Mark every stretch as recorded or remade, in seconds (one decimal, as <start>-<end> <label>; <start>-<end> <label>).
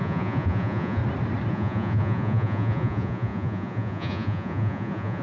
0.0-1.0 remade; 1.0-1.5 recorded; 1.5-5.2 remade